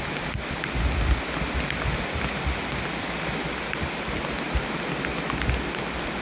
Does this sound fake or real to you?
real